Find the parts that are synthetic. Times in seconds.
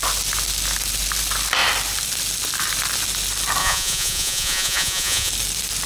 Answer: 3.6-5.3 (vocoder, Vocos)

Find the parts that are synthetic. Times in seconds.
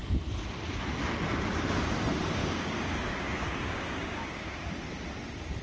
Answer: 2.4-4.8 (codec, DAC)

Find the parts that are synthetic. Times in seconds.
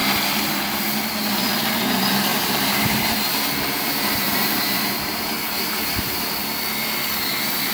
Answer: 2.3-6.4 (vocoder, BigVGAN v2)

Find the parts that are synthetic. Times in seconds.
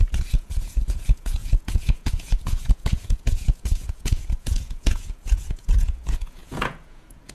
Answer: 0.0-7.3 (vocoder, Vocos)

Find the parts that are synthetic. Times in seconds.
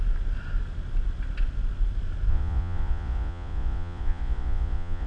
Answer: 2.3-5.1 (vocoder, Vocos)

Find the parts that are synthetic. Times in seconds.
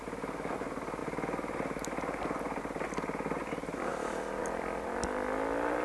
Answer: none